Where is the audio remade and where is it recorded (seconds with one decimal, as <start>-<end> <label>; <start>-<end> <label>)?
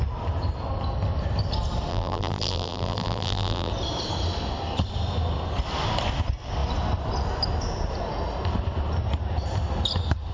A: 0.0-1.9 recorded; 1.9-3.7 remade; 3.7-10.3 recorded